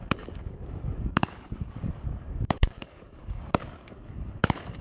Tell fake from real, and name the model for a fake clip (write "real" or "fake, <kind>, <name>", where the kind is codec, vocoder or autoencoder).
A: fake, codec, DAC